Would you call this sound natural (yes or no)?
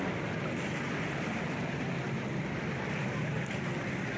yes